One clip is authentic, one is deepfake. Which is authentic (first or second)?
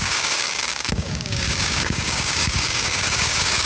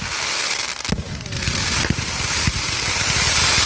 second